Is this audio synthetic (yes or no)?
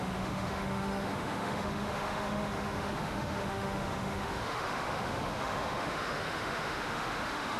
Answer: yes